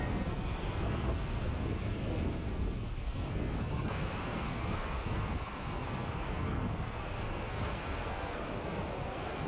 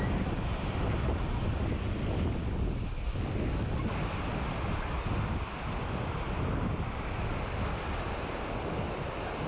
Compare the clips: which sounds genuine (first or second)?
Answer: second